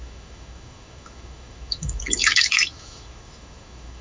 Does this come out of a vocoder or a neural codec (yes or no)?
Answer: yes